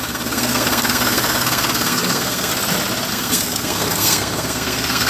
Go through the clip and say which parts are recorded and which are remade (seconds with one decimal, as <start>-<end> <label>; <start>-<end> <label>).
0.0-2.5 remade; 2.5-3.1 recorded; 3.1-5.1 remade